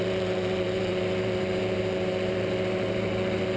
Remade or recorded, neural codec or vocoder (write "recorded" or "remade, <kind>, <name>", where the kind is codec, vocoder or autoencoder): remade, vocoder, BigVGAN v2